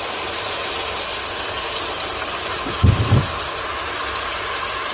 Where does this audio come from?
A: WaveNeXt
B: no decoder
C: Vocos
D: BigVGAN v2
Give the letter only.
B